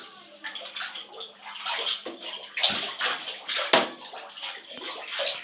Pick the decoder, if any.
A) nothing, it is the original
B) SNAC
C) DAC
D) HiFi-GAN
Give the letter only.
A